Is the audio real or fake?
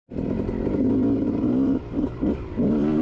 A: real